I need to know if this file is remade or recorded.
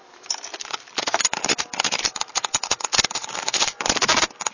remade